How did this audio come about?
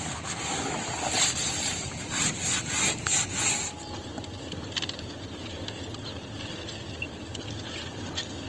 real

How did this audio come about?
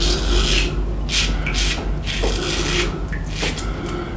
real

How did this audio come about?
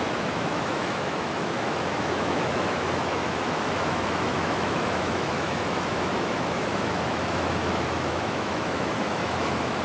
fake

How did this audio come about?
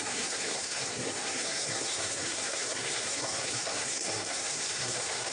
fake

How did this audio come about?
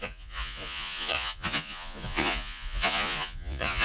fake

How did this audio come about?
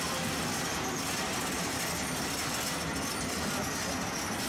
real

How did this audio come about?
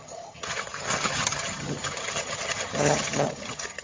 fake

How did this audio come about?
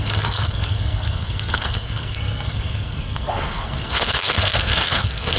fake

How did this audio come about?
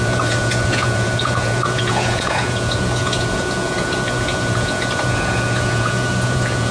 fake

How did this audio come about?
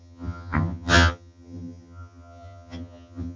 fake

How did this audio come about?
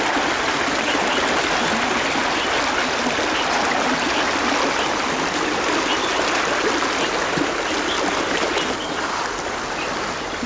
real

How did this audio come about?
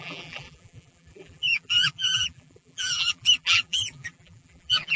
fake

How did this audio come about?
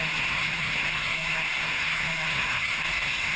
fake